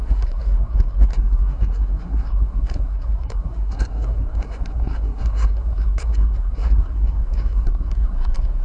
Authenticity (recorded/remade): remade